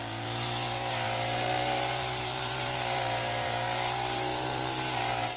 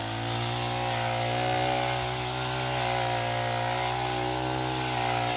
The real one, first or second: second